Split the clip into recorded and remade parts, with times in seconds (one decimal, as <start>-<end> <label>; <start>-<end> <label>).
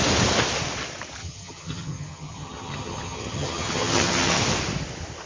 0.0-1.2 recorded; 1.2-4.4 remade; 4.4-5.3 recorded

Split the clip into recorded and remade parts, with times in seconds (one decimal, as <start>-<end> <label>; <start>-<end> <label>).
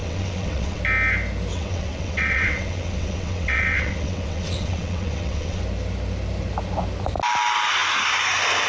0.0-0.8 remade; 0.8-1.5 recorded; 1.5-5.6 remade; 5.6-8.7 recorded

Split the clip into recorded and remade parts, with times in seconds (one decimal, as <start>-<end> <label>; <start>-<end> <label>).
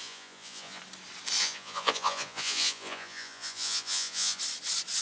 0.0-0.8 remade; 0.8-1.4 recorded; 1.4-4.4 remade; 4.4-5.0 recorded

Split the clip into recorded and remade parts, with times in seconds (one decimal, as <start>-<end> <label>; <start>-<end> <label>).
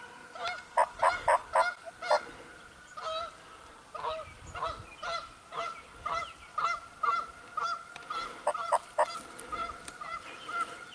0.0-10.9 recorded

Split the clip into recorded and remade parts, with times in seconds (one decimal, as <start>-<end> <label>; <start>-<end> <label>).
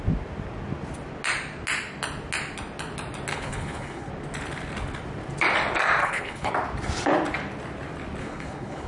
0.0-3.3 recorded; 3.3-4.1 remade; 4.1-6.0 recorded; 6.0-6.5 remade; 6.5-8.2 recorded; 8.2-8.9 remade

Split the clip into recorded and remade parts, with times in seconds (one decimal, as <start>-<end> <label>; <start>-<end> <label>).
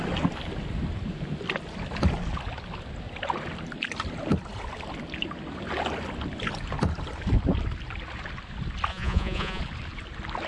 0.0-8.9 recorded; 8.9-9.6 remade; 9.6-10.5 recorded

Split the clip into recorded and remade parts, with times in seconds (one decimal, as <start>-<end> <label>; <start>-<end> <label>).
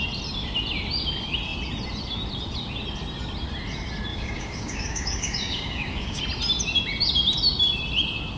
0.0-4.1 recorded; 4.1-6.2 remade; 6.2-8.4 recorded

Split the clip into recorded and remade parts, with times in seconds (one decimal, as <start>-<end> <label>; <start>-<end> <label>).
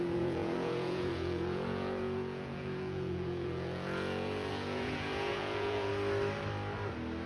0.0-5.9 remade; 5.9-7.3 recorded